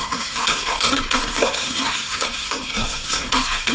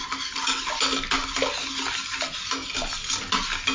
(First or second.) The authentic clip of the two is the second